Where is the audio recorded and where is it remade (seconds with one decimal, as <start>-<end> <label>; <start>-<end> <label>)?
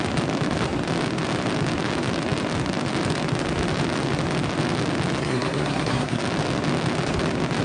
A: 0.0-5.2 recorded; 5.2-6.2 remade; 6.2-7.6 recorded